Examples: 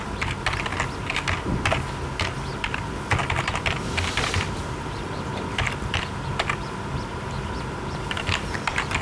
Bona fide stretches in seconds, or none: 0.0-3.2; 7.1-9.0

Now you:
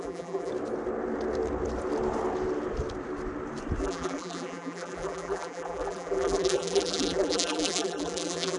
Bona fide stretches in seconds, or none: 0.5-3.8

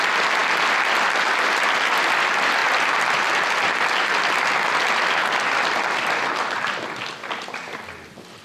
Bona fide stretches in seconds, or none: 0.0-8.4

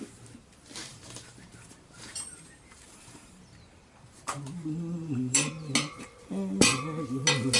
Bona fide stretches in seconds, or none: 0.0-0.9; 5.5-7.6

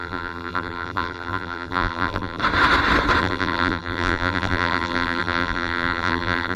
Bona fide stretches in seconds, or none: 2.4-3.2

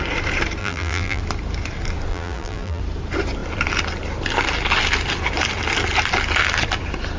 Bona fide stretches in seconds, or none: 0.0-0.6; 1.2-2.1; 2.8-7.2